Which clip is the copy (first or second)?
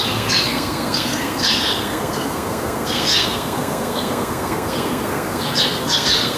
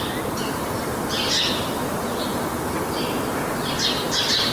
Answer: first